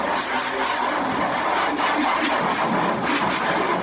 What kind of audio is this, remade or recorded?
recorded